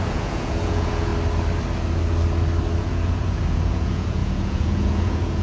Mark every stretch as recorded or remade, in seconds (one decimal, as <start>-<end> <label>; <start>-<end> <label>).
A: 0.0-1.1 remade; 1.1-2.8 recorded; 2.8-5.4 remade